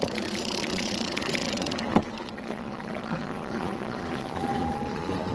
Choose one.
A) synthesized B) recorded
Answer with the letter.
A